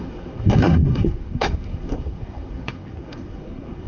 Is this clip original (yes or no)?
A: no